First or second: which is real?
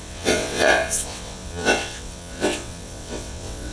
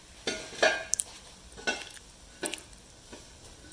second